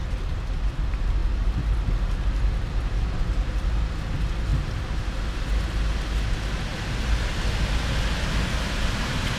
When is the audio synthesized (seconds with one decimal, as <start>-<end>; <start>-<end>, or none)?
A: 0.0-0.7; 6.7-7.5